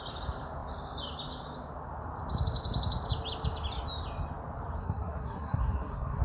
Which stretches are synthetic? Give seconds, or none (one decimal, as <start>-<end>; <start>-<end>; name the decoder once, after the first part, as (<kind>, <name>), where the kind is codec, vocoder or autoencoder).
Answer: 4.8-6.2 (codec, SNAC)